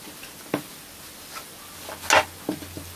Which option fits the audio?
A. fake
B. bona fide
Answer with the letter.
B